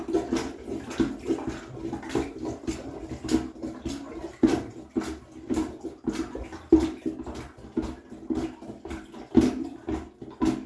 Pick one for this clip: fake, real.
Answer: real